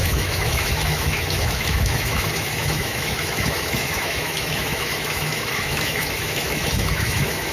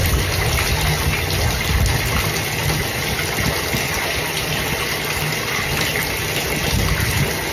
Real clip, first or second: second